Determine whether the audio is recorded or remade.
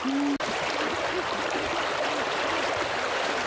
recorded